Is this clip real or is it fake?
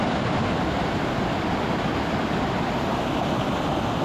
real